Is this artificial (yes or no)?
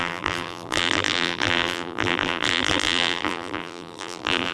yes